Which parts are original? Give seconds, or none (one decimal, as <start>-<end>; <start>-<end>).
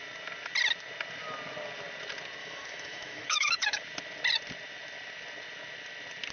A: 0.0-2.4; 3.8-6.3